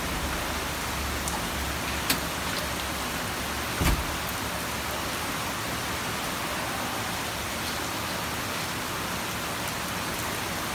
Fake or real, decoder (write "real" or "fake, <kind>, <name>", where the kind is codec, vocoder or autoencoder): real